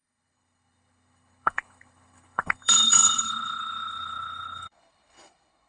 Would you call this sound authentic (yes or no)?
no